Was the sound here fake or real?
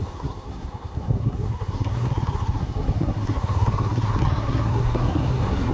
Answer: fake